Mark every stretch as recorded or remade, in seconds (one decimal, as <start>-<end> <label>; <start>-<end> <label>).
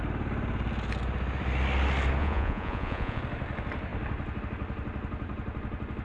0.0-2.2 recorded; 2.2-3.2 remade; 3.2-6.0 recorded